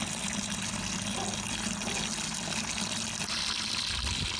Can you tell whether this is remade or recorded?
recorded